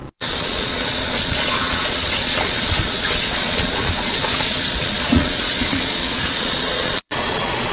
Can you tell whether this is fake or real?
fake